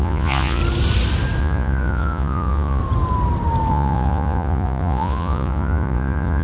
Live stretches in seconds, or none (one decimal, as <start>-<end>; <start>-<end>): 0.6-1.4; 2.8-3.7